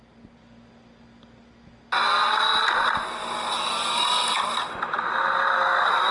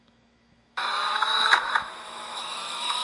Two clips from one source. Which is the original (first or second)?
first